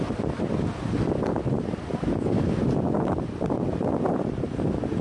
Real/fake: real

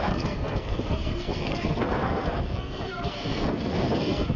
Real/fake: fake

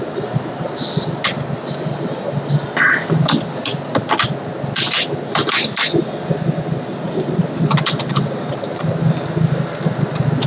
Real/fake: real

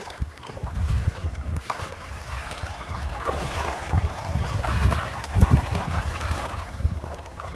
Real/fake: fake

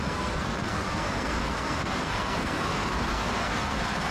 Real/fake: fake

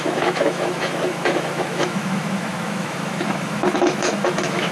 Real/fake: fake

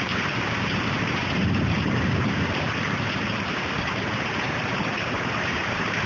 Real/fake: fake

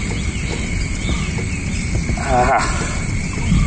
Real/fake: real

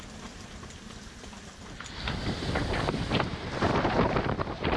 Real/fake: real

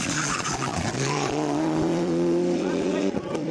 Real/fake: fake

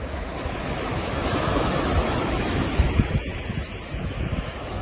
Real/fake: fake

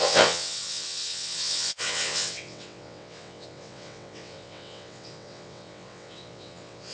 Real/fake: fake